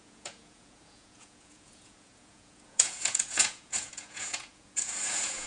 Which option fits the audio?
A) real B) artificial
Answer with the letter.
B